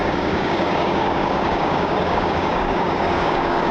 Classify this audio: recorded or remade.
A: remade